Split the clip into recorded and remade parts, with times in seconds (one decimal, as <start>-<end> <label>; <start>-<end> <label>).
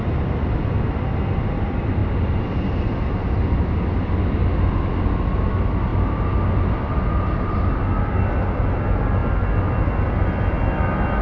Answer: 0.0-11.2 recorded